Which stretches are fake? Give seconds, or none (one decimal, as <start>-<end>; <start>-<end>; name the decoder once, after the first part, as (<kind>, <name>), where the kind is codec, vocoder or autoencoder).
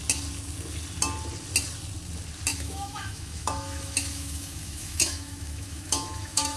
2.5-6.6 (autoencoder, DAC-VAE)